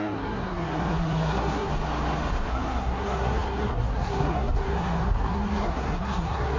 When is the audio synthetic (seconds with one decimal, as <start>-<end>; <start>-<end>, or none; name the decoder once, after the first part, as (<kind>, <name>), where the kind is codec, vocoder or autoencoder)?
0.0-1.7 (codec, SNAC); 2.5-6.6